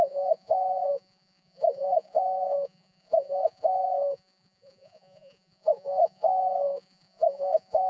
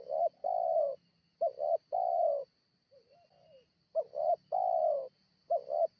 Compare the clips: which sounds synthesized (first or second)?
first